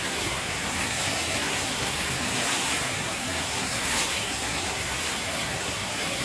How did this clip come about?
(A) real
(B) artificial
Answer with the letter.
B